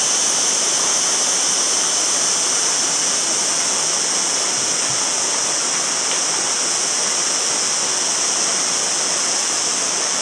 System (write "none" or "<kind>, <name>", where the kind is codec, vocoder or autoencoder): none